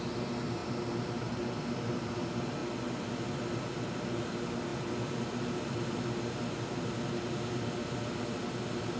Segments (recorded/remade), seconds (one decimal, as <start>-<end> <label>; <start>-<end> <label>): 0.0-9.0 recorded